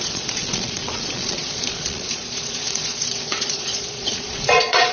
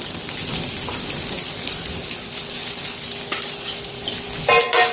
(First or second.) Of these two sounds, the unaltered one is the second